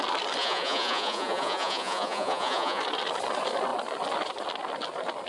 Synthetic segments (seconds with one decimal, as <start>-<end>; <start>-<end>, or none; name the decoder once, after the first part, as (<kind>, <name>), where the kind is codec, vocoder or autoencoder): 0.4-2.8 (vocoder, Vocos)